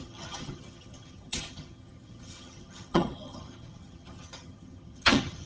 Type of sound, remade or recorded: remade